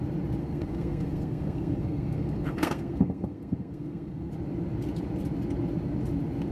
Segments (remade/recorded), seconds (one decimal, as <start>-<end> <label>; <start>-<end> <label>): 0.0-0.4 recorded; 0.4-4.3 remade; 4.3-6.5 recorded